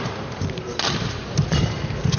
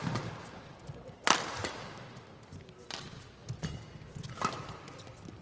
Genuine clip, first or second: second